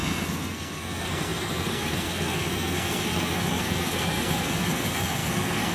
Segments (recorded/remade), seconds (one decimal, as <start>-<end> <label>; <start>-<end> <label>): 0.0-5.7 remade